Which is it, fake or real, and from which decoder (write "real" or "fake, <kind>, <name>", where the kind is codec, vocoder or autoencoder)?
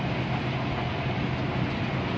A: real